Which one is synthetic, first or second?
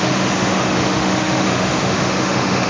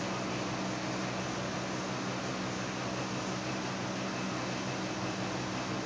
first